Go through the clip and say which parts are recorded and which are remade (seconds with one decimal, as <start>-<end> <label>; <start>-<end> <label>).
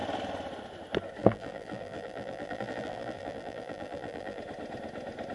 0.0-1.2 recorded; 1.2-4.4 remade; 4.4-5.3 recorded